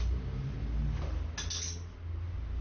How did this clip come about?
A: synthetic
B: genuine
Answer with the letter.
B